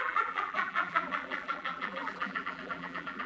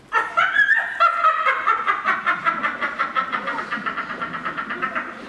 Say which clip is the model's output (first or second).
first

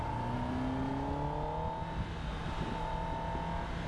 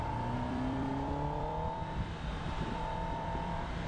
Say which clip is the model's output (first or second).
second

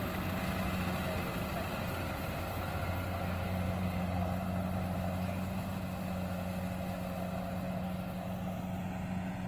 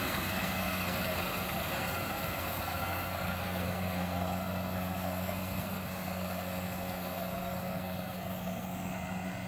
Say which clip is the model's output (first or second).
second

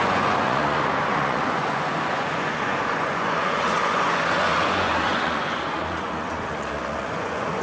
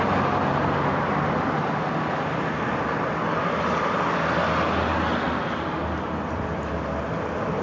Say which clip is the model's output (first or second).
first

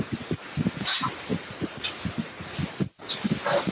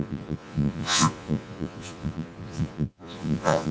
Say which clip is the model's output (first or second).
second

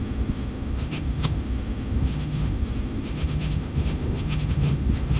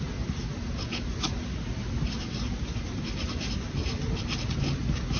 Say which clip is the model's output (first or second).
first